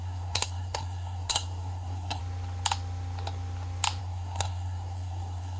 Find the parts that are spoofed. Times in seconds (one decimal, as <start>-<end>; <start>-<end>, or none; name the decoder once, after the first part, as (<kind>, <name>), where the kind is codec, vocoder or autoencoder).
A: 0.0-2.2 (codec, SNAC); 4.0-5.6